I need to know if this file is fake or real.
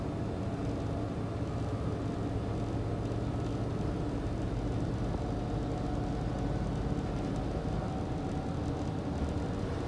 real